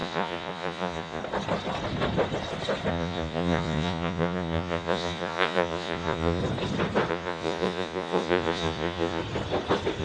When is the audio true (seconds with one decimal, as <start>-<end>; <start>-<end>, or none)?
1.2-2.9; 6.4-7.1; 9.2-10.0